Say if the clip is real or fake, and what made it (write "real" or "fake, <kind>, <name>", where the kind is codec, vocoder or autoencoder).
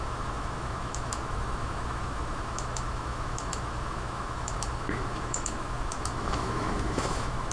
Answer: fake, autoencoder, DAC-VAE